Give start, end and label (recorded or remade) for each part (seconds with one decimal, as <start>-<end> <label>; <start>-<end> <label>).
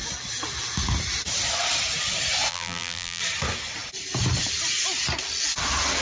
0.0-2.5 recorded; 2.5-3.2 remade; 3.2-6.0 recorded